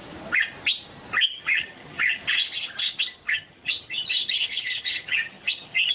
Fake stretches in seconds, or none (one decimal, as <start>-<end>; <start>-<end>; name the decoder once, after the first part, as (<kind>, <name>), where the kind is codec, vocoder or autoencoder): 1.3-2.2 (vocoder, HiFi-GAN); 3.3-5.9